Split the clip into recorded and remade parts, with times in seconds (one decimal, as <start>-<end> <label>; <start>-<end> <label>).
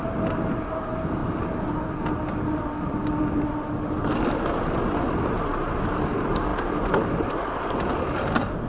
0.0-8.7 recorded